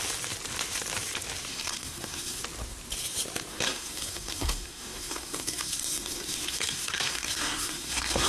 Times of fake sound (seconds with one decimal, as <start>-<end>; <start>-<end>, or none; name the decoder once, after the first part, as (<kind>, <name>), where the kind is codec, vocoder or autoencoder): 1.5-2.4 (codec, SNAC); 3.5-8.3